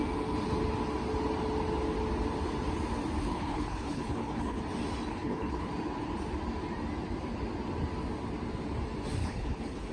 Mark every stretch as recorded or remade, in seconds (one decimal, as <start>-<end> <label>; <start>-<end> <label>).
0.0-3.2 recorded; 3.2-4.6 remade; 4.6-5.1 recorded; 5.1-5.7 remade; 5.7-9.2 recorded; 9.2-9.9 remade